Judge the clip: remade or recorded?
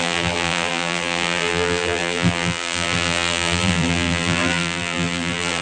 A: remade